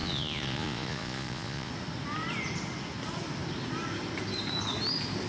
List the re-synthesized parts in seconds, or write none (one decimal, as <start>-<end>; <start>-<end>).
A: 0.0-1.7